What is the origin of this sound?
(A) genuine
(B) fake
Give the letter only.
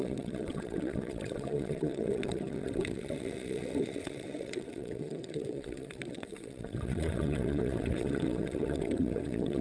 B